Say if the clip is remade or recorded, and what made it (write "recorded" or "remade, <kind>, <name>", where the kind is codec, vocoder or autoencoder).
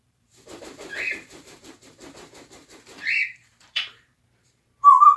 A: remade, vocoder, BigVGAN v2